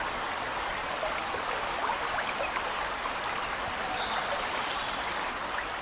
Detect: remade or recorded recorded